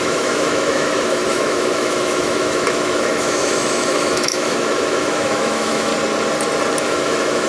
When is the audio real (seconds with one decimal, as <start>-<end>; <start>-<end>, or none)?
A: 5.9-6.8